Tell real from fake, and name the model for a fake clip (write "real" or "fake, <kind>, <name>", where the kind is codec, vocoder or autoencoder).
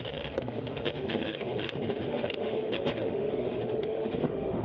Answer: fake, autoencoder, DAC-VAE